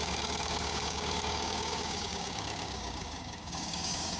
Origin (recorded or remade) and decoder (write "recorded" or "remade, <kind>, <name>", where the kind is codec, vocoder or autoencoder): remade, codec, DAC